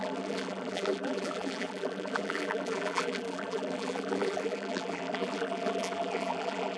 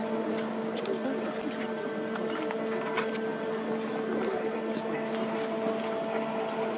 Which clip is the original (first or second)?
second